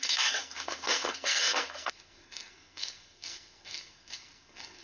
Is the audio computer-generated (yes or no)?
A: yes